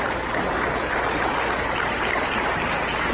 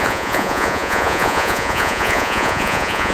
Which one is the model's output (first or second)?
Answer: second